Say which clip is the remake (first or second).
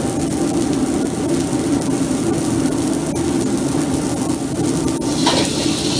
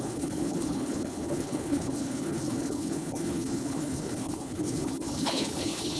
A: second